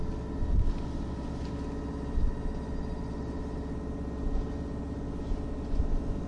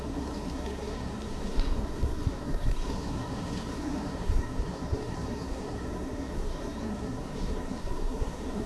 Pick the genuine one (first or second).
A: first